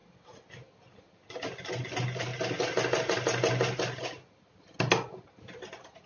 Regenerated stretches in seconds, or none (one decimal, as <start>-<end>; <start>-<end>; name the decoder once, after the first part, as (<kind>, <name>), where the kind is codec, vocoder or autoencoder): none